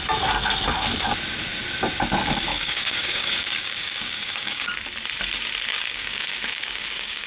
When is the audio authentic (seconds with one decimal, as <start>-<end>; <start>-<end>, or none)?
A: 0.0-2.5; 4.7-5.7